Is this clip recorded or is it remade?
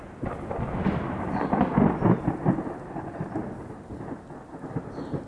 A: recorded